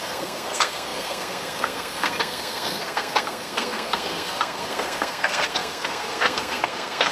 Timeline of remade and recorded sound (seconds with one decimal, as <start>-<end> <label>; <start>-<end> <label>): 0.0-7.1 remade